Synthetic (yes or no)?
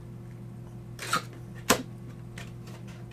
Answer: no